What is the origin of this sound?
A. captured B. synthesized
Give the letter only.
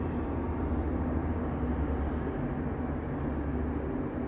A